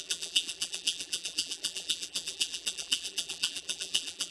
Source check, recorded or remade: remade